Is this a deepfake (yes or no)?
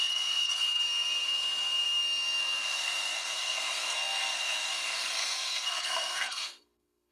yes